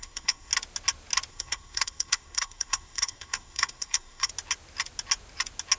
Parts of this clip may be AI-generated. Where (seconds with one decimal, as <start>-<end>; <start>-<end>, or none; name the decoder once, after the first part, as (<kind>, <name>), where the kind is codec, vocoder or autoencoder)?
0.0-0.5 (codec, SNAC); 1.3-4.3